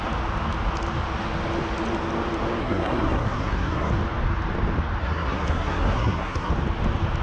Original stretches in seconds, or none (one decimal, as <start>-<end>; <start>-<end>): 0.0-2.6; 3.9-5.0; 6.5-7.2

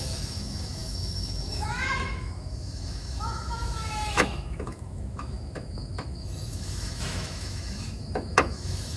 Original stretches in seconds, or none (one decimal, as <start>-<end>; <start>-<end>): none

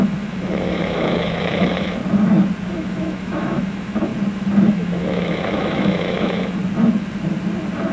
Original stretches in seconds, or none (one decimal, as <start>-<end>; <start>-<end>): 2.0-2.7; 4.1-4.7; 6.6-7.9

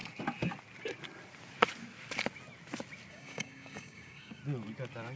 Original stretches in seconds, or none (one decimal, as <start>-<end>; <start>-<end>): 0.0-3.1; 4.4-5.2